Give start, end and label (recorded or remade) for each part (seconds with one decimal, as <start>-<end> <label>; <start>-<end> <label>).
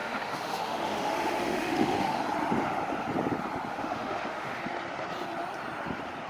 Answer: 0.0-2.2 remade; 2.2-3.7 recorded; 3.7-4.6 remade; 4.6-6.3 recorded